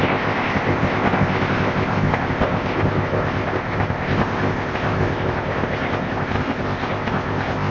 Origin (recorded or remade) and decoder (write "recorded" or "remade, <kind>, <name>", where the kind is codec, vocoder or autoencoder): remade, codec, ZipCodec